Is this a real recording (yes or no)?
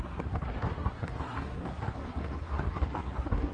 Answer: no